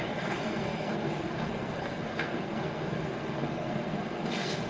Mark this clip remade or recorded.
remade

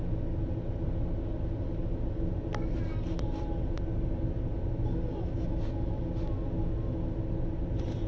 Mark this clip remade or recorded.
recorded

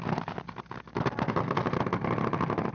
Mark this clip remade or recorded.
recorded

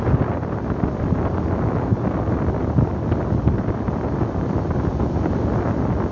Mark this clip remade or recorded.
recorded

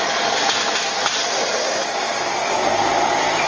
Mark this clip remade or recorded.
recorded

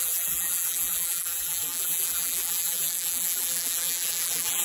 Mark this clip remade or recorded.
remade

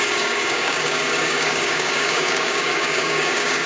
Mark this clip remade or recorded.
remade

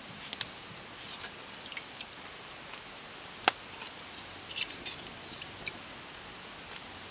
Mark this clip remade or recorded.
recorded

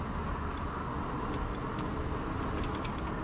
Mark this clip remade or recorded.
recorded